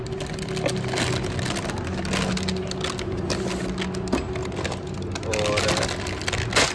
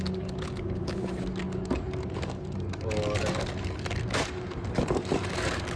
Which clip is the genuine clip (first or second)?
first